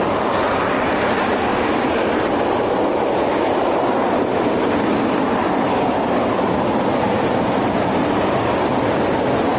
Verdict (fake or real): real